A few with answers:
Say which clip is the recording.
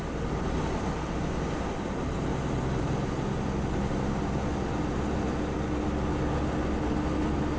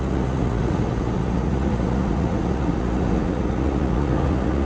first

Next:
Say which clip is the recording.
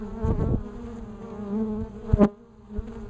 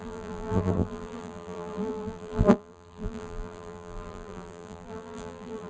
first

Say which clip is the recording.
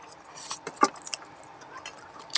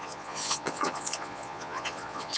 first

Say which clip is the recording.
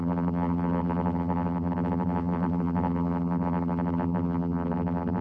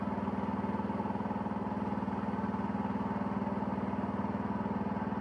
second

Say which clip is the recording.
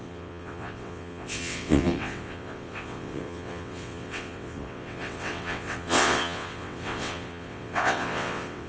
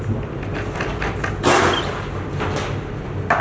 second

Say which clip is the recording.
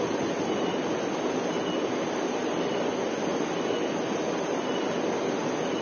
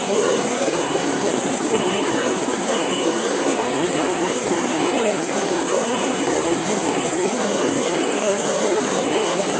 first